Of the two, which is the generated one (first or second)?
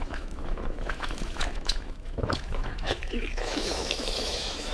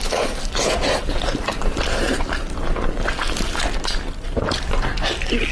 first